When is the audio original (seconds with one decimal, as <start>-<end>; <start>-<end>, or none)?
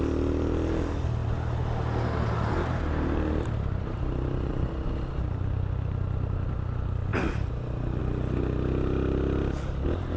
0.0-10.2